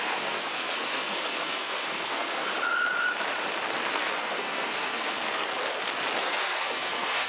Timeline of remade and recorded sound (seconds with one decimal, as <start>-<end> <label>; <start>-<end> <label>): 0.0-2.5 remade; 2.5-3.9 recorded; 3.9-5.6 remade; 5.6-6.2 recorded; 6.2-7.3 remade